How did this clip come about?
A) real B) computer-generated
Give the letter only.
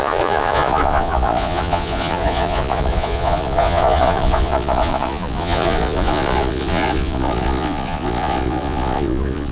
B